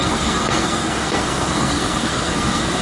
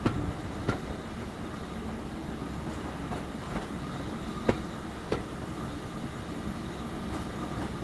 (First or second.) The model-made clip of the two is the first